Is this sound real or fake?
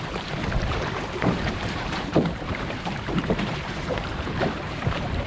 fake